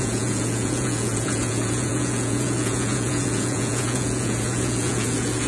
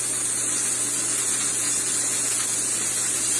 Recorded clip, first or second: second